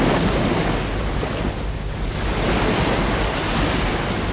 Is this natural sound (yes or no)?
yes